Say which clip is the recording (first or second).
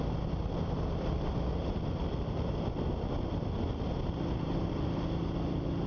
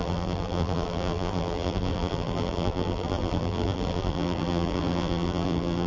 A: first